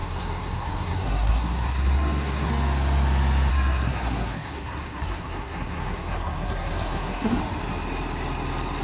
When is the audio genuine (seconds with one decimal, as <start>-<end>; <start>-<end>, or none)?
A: 2.5-3.5; 7.4-8.8